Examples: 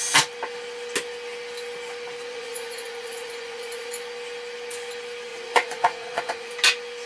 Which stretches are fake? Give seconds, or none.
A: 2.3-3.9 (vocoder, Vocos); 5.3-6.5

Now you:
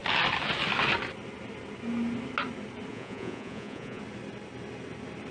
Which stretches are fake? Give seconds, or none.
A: 2.9-4.0 (vocoder, Vocos)

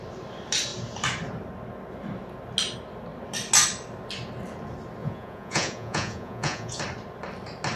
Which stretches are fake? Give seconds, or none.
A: 5.0-6.8 (vocoder, Vocos)

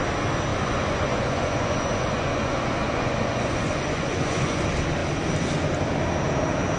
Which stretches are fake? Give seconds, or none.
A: 0.5-4.6 (vocoder, Vocos)

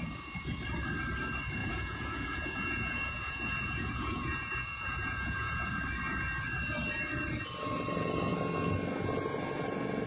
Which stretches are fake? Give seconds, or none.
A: 1.6-5.7 (vocoder, Vocos)

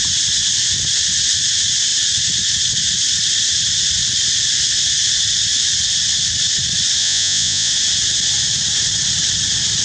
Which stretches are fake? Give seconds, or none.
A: 7.0-7.7 (vocoder, Vocos)

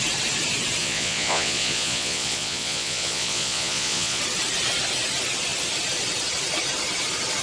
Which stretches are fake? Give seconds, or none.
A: 0.8-4.2 (vocoder, Vocos)